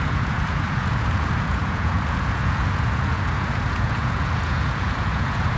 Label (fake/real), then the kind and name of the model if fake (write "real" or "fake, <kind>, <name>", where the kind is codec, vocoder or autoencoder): fake, vocoder, Vocos